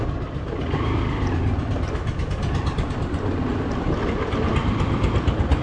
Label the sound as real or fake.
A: real